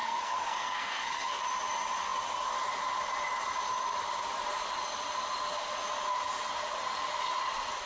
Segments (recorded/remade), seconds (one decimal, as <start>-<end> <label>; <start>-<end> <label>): 0.0-1.4 remade; 1.4-7.8 recorded